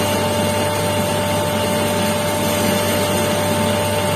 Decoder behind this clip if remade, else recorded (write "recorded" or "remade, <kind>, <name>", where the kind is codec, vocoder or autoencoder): recorded